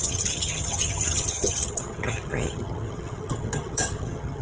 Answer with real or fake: fake